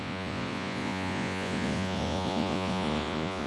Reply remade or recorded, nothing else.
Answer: remade